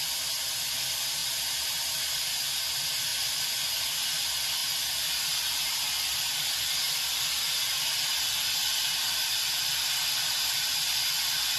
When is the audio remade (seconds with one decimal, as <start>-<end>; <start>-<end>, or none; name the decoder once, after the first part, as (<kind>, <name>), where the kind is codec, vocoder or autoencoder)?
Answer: 3.1-3.8 (vocoder, Vocos)